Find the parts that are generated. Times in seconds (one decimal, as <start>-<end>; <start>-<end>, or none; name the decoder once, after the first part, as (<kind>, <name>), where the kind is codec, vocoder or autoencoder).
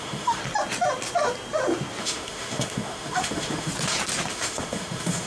0.0-0.4 (autoencoder, DAC-VAE); 2.0-3.7; 4.3-5.3